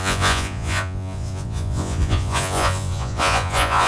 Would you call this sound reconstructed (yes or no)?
yes